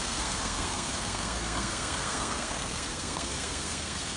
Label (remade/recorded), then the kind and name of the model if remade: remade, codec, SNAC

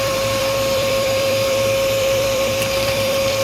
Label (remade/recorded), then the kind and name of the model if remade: remade, vocoder, BigVGAN v2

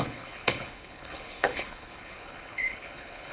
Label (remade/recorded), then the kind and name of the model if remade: remade, codec, HILCodec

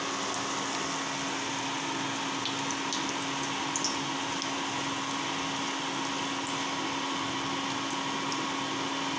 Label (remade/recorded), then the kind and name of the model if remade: recorded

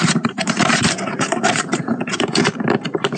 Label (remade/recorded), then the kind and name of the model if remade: remade, vocoder, BigVGAN v2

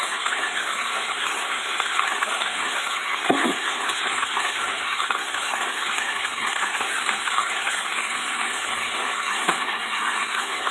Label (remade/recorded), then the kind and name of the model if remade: remade, codec, SNAC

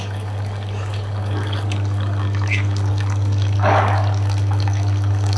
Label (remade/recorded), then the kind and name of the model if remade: remade, codec, DAC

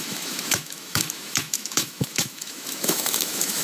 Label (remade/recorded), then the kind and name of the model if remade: remade, autoencoder, DAC-VAE